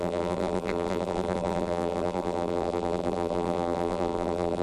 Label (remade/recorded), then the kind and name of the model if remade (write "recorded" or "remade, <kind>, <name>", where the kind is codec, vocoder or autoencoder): remade, vocoder, BigVGAN v2